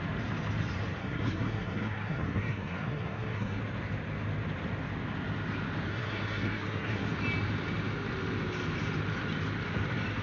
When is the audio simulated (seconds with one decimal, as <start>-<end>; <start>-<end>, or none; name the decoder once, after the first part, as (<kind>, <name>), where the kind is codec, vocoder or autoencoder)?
1.0-3.6 (codec, SNAC); 5.9-7.1